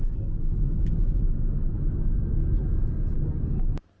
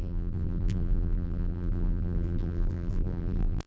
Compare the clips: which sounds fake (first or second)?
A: second